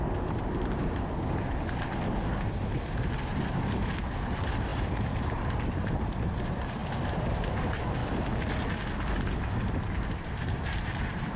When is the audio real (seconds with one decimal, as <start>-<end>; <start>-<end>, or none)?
8.0-9.7